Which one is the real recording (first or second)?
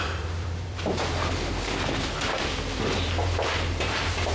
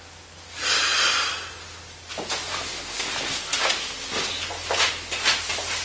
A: second